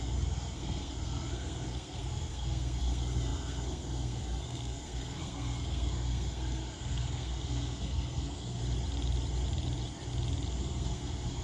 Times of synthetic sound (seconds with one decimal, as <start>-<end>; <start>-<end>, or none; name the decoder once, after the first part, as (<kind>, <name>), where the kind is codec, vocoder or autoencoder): 0.0-8.6 (codec, SNAC); 10.6-11.4